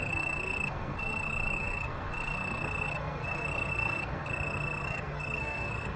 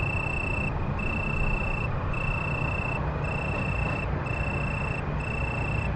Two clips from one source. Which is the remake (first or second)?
first